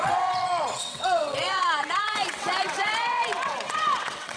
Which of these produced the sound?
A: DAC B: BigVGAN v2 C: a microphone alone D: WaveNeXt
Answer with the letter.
D